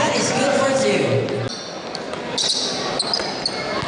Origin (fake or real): real